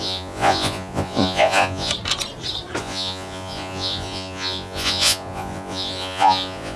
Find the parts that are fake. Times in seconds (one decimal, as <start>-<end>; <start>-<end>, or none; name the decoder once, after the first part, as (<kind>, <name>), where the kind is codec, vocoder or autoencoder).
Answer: 0.0-1.9 (vocoder, Vocos); 2.8-6.8